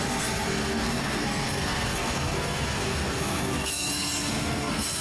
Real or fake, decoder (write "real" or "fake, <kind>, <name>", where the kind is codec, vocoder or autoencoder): fake, codec, SNAC